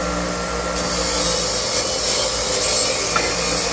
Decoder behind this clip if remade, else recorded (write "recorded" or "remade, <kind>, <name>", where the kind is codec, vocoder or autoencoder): recorded